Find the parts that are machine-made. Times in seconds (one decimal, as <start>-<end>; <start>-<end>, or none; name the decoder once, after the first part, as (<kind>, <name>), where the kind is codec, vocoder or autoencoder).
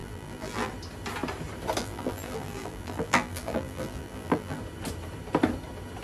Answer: 0.0-0.7 (vocoder, BigVGAN v2); 1.8-4.6